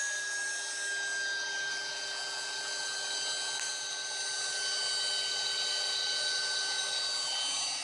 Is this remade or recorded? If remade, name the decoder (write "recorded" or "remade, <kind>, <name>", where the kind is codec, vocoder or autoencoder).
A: recorded